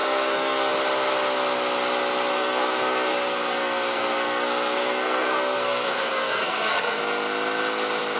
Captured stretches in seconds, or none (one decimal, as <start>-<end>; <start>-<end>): 0.7-2.3; 7.0-8.2